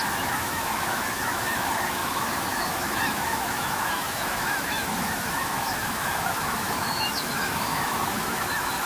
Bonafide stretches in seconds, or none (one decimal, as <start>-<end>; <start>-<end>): none